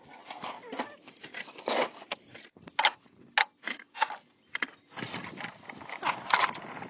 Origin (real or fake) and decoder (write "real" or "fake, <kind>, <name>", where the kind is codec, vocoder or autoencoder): real